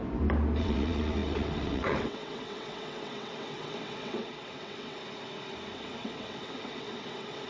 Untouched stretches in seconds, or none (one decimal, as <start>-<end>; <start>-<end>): 0.0-0.6; 5.0-5.7